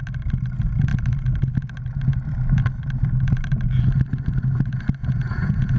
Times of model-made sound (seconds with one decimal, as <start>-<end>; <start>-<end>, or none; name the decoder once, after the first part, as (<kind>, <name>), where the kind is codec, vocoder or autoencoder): 5.0-5.8 (vocoder, Vocos)